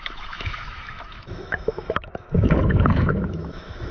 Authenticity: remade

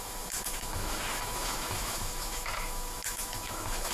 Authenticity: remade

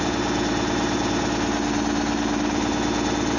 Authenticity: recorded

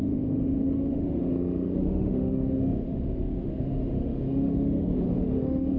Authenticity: remade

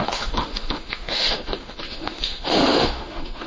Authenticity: remade